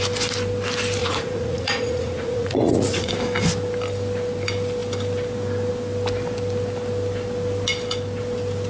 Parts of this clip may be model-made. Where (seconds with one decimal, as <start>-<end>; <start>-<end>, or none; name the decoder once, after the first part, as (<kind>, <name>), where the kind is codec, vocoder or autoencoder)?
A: 1.0-3.1 (vocoder, Vocos)